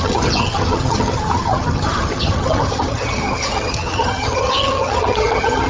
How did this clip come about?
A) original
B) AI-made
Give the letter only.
B